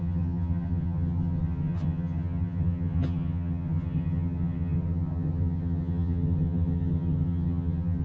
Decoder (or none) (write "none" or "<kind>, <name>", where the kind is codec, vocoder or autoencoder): vocoder, HiFi-GAN